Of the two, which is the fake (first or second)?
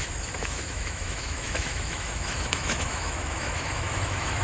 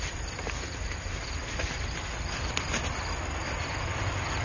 first